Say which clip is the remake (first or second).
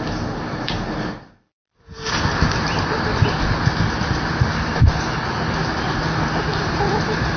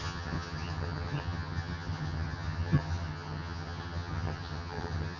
second